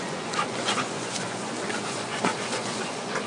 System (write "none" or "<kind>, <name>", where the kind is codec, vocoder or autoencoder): vocoder, Vocos